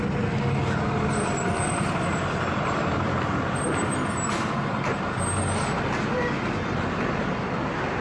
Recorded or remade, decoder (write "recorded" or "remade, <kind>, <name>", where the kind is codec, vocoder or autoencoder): recorded